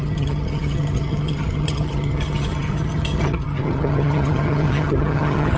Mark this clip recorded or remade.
remade